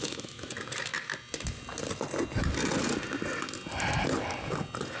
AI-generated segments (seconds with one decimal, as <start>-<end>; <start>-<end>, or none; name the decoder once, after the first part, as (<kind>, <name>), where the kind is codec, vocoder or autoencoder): 0.0-0.5 (autoencoder, DAC-VAE)